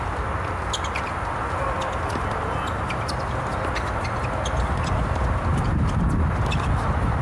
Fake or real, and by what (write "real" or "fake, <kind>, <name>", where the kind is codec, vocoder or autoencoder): real